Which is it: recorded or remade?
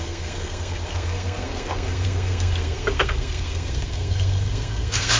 remade